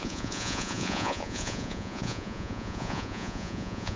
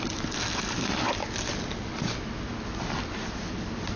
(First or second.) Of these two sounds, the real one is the second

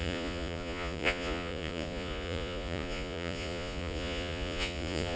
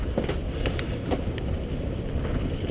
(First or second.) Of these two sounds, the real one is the second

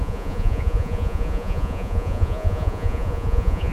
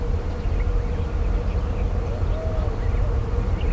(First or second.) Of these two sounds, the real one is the second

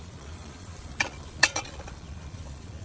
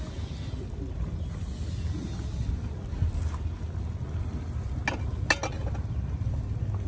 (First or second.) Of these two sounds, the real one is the second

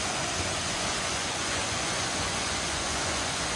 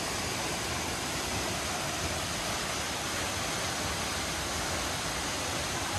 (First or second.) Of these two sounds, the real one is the second